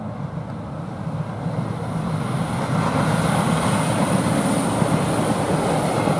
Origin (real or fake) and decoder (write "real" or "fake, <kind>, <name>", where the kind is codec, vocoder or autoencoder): real